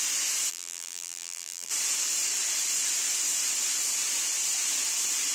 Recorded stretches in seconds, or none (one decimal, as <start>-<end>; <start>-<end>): 0.0-0.5; 1.7-5.3